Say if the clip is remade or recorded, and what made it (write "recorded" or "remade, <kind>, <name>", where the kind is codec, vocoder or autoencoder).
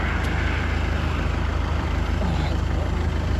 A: recorded